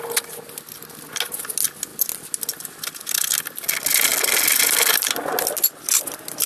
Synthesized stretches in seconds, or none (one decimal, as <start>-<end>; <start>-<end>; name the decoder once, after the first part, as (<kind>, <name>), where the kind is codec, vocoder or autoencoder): none